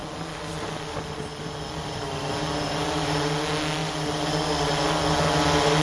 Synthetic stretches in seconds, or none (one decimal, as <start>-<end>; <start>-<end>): none